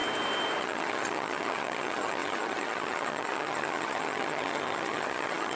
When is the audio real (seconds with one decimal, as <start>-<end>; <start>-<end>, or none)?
0.0-0.6